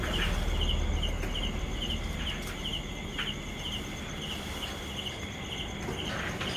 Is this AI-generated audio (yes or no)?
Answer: no